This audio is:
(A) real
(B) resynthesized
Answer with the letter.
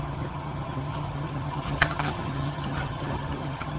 B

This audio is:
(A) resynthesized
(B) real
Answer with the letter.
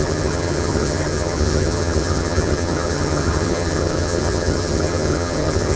A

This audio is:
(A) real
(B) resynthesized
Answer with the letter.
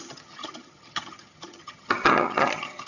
B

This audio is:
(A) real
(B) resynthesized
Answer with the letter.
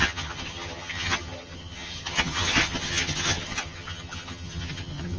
B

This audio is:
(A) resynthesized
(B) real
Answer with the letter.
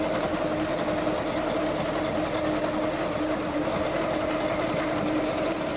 B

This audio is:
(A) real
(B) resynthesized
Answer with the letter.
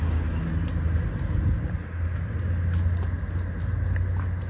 A